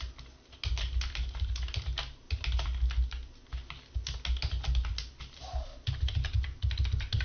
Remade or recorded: recorded